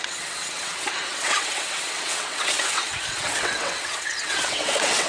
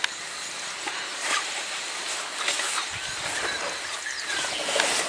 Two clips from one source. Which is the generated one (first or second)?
first